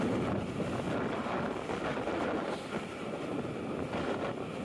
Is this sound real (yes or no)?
yes